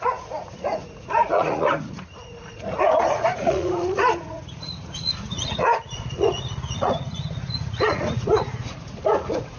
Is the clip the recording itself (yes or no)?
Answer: no